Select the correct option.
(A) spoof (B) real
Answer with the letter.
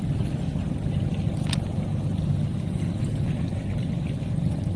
B